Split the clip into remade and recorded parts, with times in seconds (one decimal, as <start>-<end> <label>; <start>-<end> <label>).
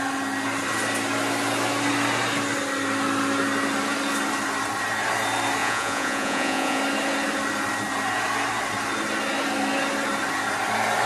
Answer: 0.0-5.6 recorded; 5.6-6.8 remade; 6.8-11.1 recorded